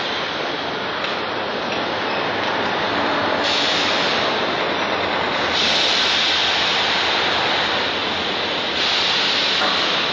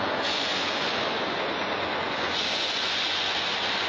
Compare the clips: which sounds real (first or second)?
first